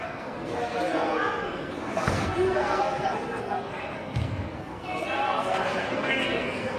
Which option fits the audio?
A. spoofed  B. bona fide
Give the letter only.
A